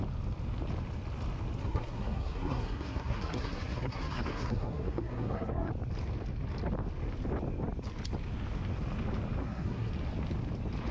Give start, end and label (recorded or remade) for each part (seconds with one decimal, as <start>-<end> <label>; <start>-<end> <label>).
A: 0.0-1.6 recorded; 1.6-5.7 remade; 5.7-9.4 recorded; 9.4-9.9 remade; 9.9-10.9 recorded